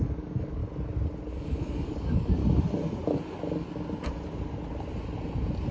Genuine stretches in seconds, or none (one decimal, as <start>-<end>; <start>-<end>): 0.6-1.3; 2.4-5.7